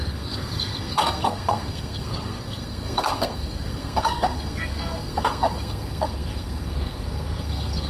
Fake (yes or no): yes